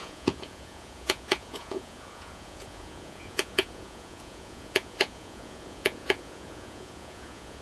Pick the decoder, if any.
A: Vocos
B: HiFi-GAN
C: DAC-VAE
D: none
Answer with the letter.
A